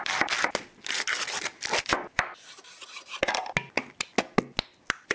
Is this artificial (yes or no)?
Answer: no